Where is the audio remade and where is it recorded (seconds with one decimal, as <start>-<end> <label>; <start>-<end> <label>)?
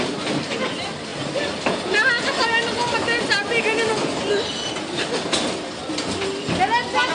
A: 0.0-7.1 recorded